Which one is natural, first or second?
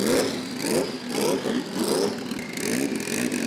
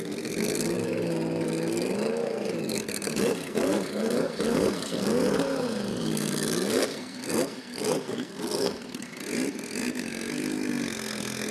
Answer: first